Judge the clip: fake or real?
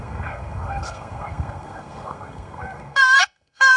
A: fake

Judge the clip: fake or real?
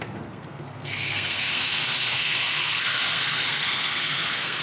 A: fake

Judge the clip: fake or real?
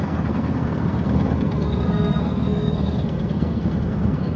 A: fake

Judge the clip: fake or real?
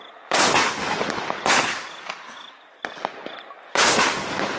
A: real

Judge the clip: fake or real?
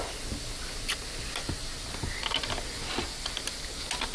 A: real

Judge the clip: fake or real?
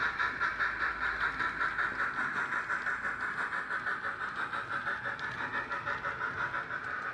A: real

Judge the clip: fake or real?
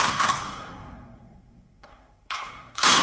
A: fake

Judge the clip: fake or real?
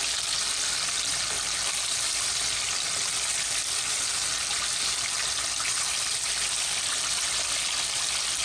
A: real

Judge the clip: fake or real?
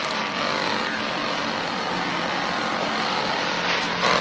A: real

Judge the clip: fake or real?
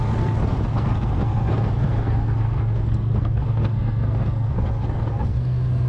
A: fake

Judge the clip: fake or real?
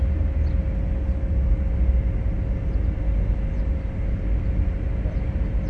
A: real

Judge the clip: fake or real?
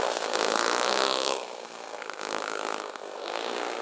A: fake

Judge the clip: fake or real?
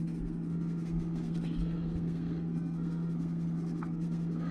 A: fake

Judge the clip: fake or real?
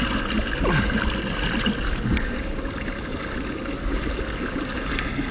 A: real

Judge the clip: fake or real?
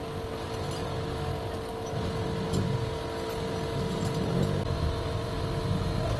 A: real